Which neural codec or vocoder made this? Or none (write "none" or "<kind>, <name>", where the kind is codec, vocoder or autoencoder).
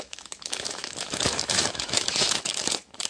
autoencoder, DAC-VAE